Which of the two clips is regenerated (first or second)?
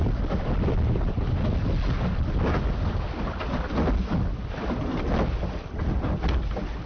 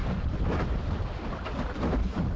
second